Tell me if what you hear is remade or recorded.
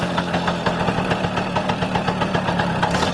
recorded